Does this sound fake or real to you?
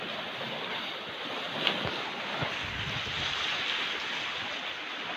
real